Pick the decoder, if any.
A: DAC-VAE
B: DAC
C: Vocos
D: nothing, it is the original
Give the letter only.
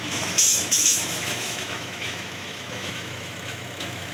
A